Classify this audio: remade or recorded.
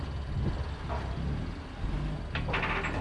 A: recorded